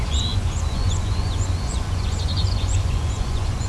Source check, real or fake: fake